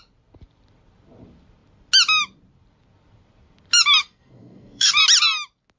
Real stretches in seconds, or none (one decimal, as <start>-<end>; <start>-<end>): 0.0-4.0; 4.9-5.8